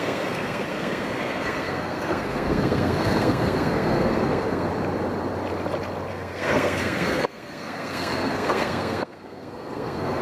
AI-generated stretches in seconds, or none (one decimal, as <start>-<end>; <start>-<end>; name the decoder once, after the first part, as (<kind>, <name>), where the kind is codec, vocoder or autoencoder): 0.0-4.7 (codec, SNAC); 6.1-10.2